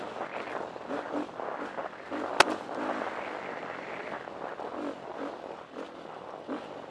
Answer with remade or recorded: recorded